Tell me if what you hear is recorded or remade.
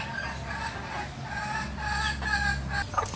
recorded